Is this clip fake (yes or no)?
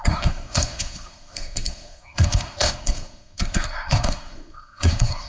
yes